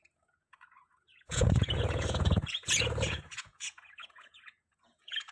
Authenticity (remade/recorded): remade